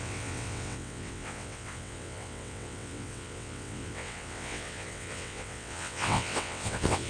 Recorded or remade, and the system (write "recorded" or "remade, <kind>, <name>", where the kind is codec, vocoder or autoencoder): remade, vocoder, WaveNeXt